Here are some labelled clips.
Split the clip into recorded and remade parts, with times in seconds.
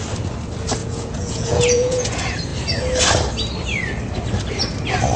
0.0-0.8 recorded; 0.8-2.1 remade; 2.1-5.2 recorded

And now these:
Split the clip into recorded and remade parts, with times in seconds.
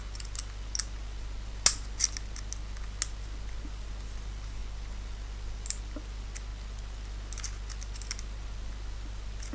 0.0-9.5 recorded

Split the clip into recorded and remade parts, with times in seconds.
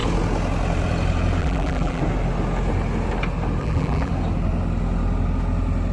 0.0-1.4 recorded; 1.4-2.0 remade; 2.0-3.6 recorded; 3.6-4.1 remade; 4.1-5.9 recorded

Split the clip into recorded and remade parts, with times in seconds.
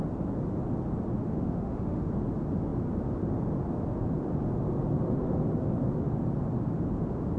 0.0-1.3 recorded; 1.3-2.1 remade; 2.1-7.4 recorded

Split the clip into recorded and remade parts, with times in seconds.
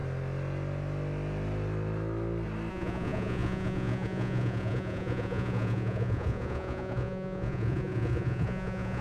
0.0-2.7 recorded; 2.7-9.0 remade